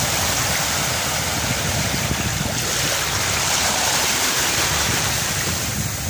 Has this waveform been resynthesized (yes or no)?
no